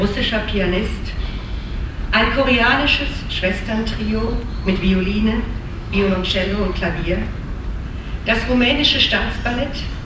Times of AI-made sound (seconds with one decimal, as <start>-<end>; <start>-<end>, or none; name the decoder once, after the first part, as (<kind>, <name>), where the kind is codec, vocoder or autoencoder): 5.7-6.7 (autoencoder, DAC-VAE)